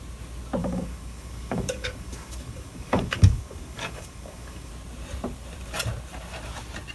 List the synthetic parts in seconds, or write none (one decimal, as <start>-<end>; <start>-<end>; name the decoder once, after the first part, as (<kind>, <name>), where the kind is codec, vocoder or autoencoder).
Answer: 0.6-4.7 (codec, DAC)